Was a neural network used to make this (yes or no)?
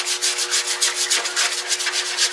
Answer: no